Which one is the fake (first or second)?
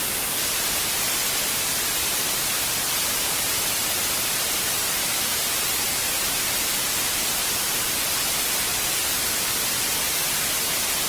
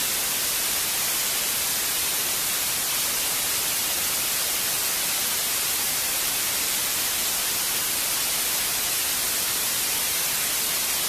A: first